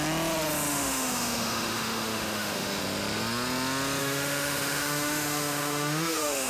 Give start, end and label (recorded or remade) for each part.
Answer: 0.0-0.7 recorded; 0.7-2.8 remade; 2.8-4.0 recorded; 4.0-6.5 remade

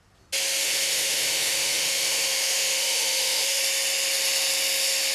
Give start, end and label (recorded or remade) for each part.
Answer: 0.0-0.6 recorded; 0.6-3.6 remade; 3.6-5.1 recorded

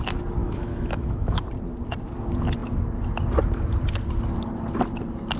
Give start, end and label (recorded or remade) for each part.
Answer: 0.0-0.4 recorded; 0.4-1.4 remade; 1.4-5.4 recorded

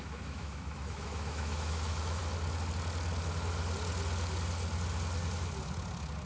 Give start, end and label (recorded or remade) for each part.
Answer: 0.0-2.2 remade; 2.2-6.3 recorded

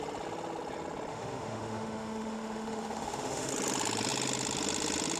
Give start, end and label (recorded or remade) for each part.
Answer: 0.0-1.1 recorded; 1.1-3.5 remade; 3.5-5.2 recorded

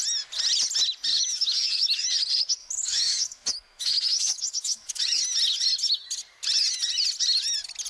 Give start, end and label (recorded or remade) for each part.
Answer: 0.0-1.1 recorded; 1.1-2.1 remade; 2.1-2.6 recorded; 2.6-5.2 remade; 5.2-7.9 recorded

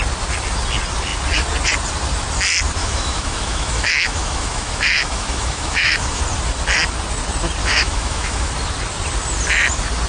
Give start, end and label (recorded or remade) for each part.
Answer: 0.0-2.8 recorded; 2.8-6.2 remade; 6.2-7.6 recorded; 7.6-8.5 remade; 8.5-10.1 recorded